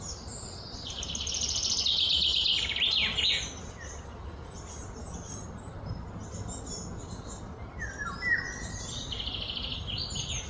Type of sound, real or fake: real